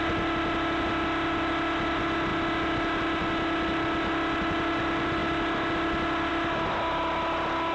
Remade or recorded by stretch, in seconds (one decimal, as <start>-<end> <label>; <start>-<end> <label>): 0.0-7.7 recorded